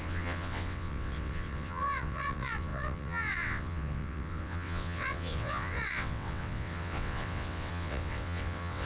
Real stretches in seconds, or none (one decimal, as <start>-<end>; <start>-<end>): none